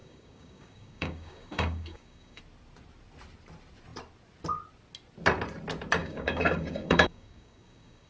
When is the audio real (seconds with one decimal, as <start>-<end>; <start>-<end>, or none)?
2.4-6.0